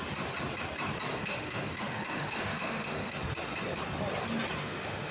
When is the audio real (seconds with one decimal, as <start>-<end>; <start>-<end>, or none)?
0.0-1.1; 3.1-4.6